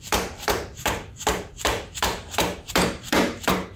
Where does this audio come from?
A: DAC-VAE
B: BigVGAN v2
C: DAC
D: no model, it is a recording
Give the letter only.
B